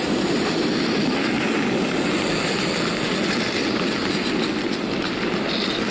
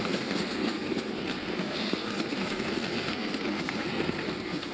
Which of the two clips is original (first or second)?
first